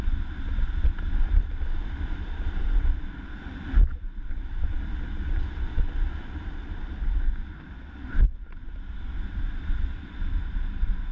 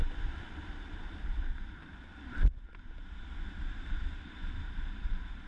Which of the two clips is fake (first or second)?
second